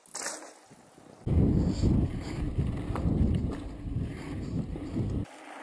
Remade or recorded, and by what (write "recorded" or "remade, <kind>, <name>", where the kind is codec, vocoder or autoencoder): recorded